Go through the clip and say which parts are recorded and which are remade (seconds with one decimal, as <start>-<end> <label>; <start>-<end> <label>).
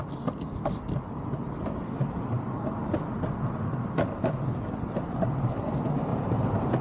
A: 0.0-6.1 recorded; 6.1-6.8 remade